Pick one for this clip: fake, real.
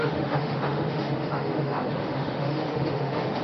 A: fake